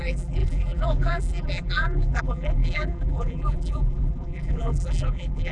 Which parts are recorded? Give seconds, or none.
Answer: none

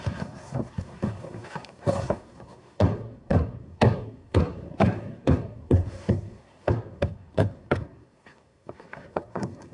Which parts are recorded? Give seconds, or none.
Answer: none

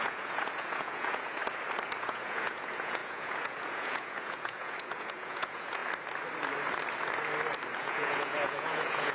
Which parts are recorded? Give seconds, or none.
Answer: 1.4-2.0; 5.8-7.8

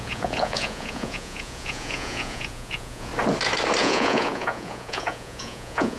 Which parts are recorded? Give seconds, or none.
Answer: 3.1-3.8

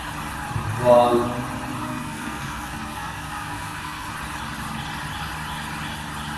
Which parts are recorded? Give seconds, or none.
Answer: 0.0-1.8; 4.1-6.4

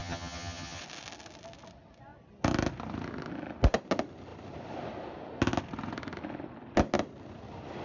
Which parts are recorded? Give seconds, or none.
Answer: 0.8-7.8